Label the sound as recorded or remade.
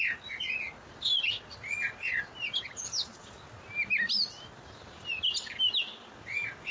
recorded